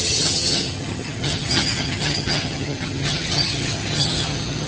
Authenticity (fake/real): fake